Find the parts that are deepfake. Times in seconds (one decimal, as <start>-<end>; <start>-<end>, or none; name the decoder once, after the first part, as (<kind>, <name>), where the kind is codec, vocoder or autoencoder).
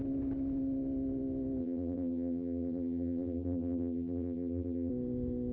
1.6-4.9 (vocoder, BigVGAN v2)